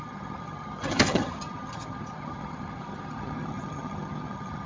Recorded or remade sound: remade